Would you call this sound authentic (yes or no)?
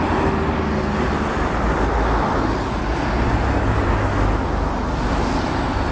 yes